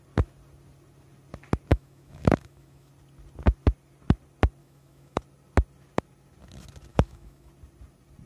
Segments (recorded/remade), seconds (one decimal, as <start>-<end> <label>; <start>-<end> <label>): 0.0-1.7 recorded; 1.7-2.9 remade; 2.9-4.6 recorded; 4.6-5.2 remade; 5.2-6.9 recorded; 6.9-7.5 remade; 7.5-8.3 recorded